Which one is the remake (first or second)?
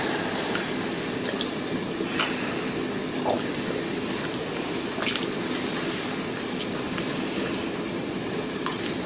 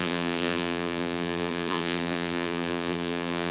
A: second